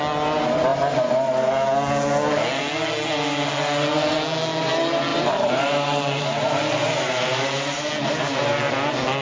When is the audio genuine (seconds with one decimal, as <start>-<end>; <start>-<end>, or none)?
0.0-5.1; 7.9-9.2